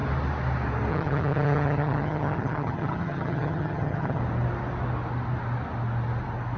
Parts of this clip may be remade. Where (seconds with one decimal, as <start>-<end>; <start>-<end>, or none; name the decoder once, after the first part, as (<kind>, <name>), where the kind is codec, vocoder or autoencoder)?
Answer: 0.9-4.2 (vocoder, HiFi-GAN)